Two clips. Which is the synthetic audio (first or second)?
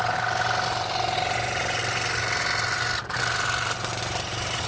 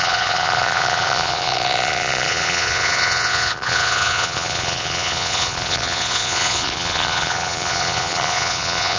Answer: second